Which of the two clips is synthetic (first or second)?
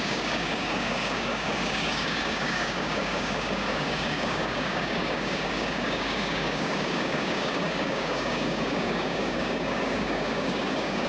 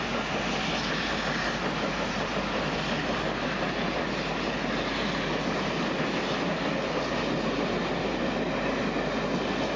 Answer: first